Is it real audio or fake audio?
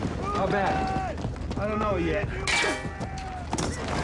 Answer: real